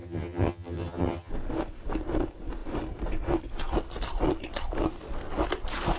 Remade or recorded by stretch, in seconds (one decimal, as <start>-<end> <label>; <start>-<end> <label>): 0.0-1.3 remade; 1.3-6.0 recorded